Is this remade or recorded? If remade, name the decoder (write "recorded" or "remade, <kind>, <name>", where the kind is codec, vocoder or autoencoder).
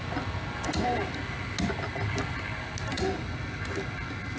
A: recorded